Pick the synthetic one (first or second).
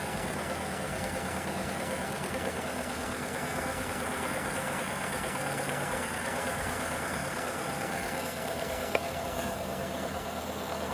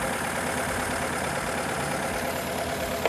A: first